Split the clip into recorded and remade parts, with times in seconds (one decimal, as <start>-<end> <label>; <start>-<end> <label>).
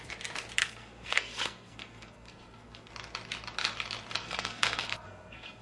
0.0-0.6 recorded; 0.6-2.9 remade; 2.9-4.2 recorded; 4.2-5.6 remade